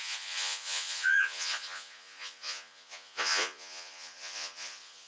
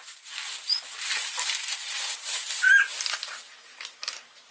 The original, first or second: second